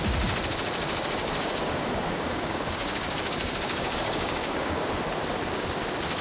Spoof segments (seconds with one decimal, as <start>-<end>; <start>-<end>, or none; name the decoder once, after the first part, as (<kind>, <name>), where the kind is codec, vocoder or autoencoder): 1.2-4.9 (codec, DAC)